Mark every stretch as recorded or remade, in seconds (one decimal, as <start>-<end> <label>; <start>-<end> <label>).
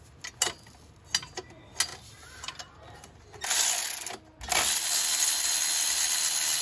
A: 0.0-6.6 recorded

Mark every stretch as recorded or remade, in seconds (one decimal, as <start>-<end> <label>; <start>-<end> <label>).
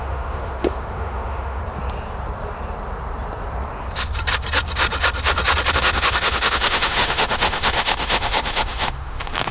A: 0.0-1.6 remade; 1.6-5.7 recorded; 5.7-9.5 remade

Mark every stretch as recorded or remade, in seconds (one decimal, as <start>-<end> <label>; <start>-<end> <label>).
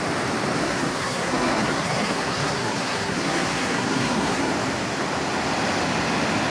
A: 0.0-0.6 recorded; 0.6-4.5 remade; 4.5-6.5 recorded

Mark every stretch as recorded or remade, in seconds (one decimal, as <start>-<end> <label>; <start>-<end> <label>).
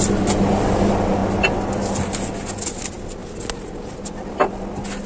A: 0.0-5.1 recorded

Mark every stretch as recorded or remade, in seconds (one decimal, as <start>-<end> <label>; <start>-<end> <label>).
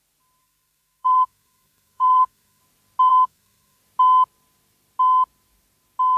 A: 0.0-0.4 recorded; 0.4-2.6 remade; 2.6-3.1 recorded; 3.1-3.8 remade; 3.8-6.2 recorded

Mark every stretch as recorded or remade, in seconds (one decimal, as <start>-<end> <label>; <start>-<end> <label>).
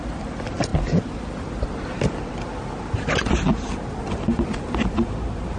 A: 0.0-5.6 recorded